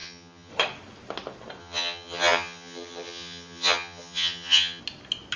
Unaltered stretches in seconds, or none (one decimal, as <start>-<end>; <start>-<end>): 0.5-1.6; 4.8-5.4